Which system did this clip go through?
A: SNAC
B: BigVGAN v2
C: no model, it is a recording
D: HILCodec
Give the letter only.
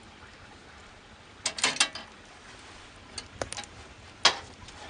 C